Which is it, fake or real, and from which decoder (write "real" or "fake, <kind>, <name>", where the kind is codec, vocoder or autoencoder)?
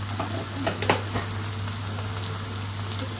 real